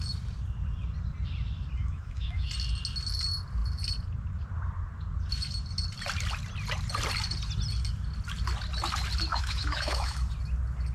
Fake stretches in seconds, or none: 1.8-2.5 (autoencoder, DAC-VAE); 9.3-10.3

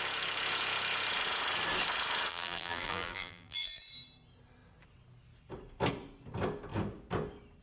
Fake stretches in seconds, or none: 2.3-3.8 (vocoder, BigVGAN v2)

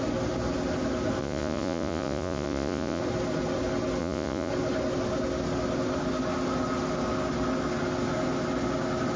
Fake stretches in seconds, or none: 1.2-3.0 (vocoder, Vocos); 4.0-4.5

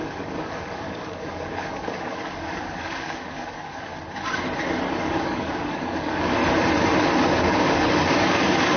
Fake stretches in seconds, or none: 0.0-3.9 (codec, DAC); 4.9-6.4; 7.0-8.8

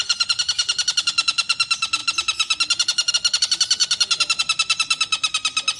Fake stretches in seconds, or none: none

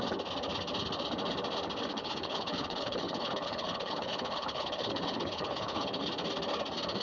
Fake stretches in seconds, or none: 1.9-6.1 (codec, HILCodec)

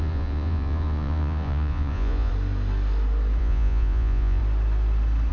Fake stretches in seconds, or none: 0.0-2.3 (vocoder, Vocos); 3.4-4.4